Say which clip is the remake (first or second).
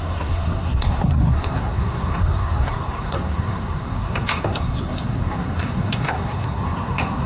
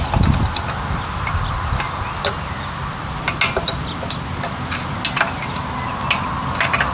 first